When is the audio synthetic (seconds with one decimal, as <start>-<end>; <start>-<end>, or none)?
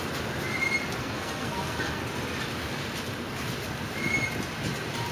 1.0-2.0